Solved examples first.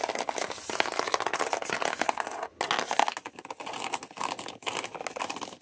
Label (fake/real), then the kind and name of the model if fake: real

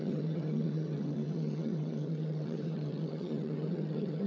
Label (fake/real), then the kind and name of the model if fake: fake, vocoder, HiFi-GAN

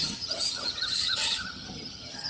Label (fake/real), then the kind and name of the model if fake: fake, vocoder, HiFi-GAN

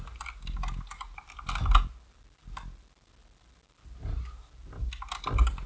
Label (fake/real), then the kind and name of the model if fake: real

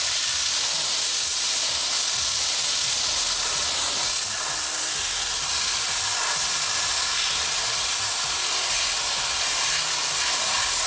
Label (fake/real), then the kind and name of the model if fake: real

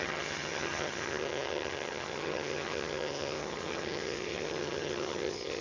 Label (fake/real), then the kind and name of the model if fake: fake, vocoder, HiFi-GAN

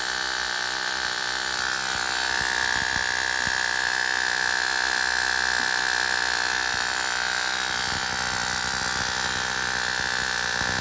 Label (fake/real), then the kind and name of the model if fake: real